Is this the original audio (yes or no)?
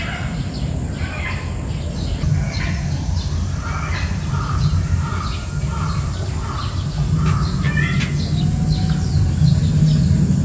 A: yes